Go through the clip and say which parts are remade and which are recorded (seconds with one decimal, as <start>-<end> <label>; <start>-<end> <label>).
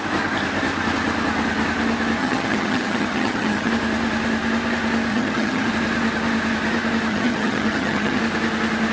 0.0-2.2 recorded; 2.2-3.7 remade; 3.7-5.1 recorded; 5.1-5.7 remade; 5.7-7.1 recorded; 7.1-8.2 remade; 8.2-8.9 recorded